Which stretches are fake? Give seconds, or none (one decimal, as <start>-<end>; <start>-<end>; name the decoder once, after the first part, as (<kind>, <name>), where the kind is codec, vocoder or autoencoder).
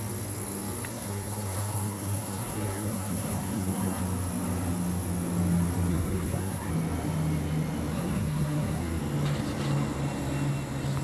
0.9-4.0 (codec, SNAC); 5.9-6.7; 7.9-9.0